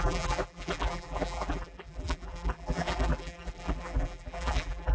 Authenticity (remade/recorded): remade